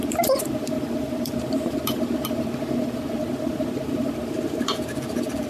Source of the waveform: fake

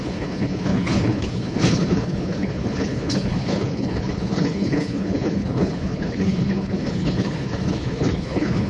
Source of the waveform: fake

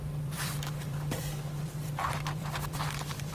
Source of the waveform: fake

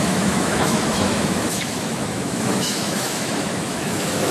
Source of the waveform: fake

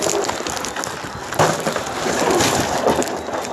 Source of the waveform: real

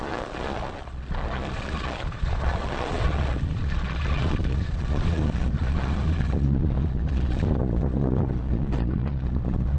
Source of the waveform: fake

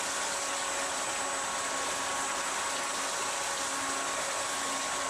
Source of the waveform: real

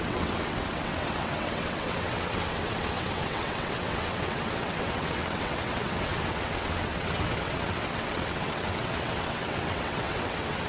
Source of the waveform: fake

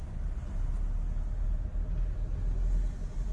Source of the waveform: real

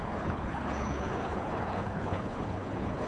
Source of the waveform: fake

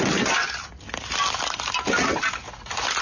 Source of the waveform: real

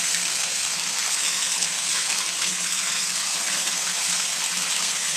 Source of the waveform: fake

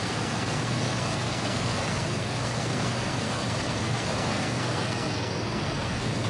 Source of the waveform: fake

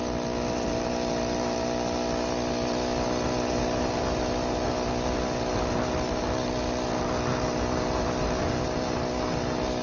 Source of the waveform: real